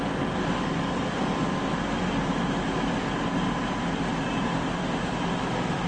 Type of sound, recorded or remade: recorded